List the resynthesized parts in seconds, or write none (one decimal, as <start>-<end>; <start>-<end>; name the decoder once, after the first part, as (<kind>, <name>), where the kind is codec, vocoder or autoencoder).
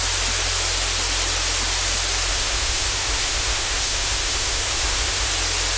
2.3-5.3 (codec, SNAC)